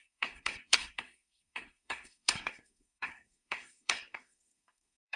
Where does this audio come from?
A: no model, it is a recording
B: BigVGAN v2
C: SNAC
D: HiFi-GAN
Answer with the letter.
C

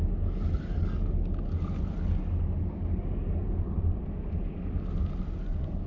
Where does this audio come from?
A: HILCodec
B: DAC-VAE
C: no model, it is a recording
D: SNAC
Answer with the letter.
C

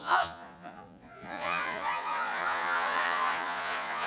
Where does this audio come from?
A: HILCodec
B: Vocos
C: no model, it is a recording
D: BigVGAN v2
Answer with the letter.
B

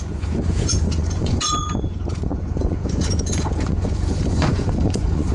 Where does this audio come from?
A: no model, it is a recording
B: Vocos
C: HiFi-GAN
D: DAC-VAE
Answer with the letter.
B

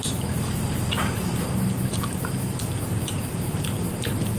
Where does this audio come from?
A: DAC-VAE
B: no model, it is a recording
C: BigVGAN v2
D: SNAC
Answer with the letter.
C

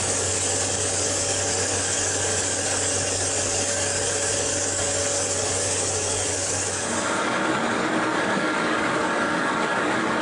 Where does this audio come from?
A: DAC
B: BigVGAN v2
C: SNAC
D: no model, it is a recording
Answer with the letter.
A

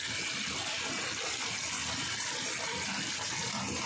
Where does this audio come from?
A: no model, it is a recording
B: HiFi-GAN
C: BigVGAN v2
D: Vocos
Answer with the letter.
A